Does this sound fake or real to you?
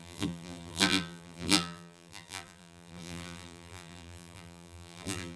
fake